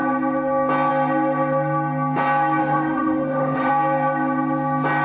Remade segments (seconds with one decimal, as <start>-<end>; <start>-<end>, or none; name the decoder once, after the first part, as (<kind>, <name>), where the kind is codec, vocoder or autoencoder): 2.6-3.7 (autoencoder, DAC-VAE)